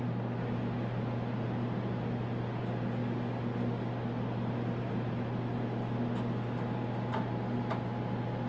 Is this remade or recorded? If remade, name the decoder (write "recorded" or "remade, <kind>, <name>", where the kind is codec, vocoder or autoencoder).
recorded